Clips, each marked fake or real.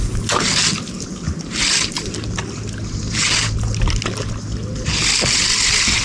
real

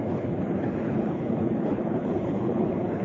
fake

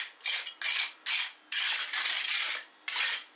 real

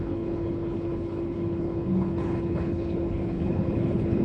fake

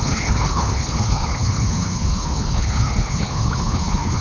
fake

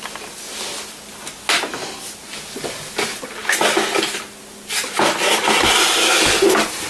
real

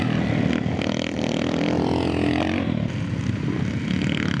real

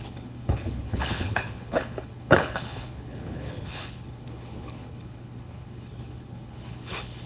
fake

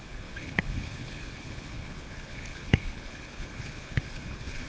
fake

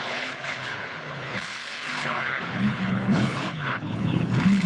fake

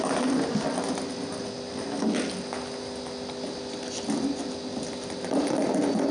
real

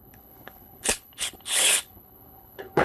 fake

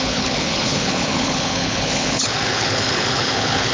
fake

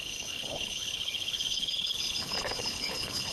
fake